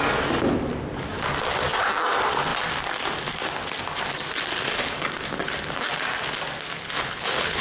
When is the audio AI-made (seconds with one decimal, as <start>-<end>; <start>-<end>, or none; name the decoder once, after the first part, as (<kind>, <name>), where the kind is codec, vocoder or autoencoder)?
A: 6.8-7.6 (codec, HILCodec)